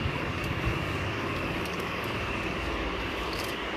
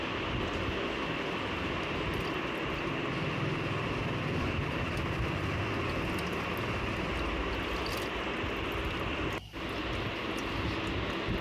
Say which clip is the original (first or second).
second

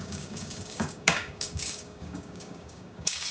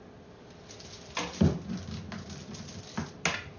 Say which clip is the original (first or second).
second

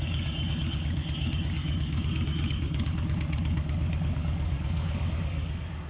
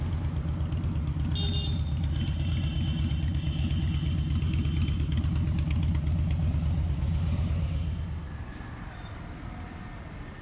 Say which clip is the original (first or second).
second